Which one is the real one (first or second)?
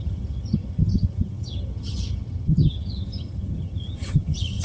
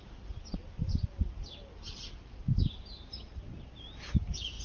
second